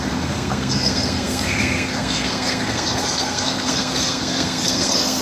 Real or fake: fake